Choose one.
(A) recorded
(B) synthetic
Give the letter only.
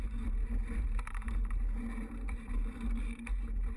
B